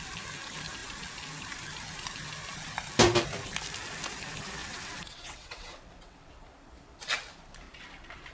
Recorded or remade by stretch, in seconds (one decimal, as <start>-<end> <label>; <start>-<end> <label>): 0.0-4.6 recorded; 4.6-6.3 remade; 6.3-8.3 recorded